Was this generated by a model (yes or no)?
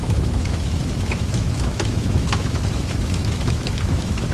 yes